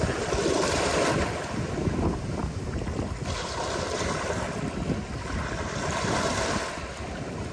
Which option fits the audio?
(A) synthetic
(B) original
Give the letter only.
B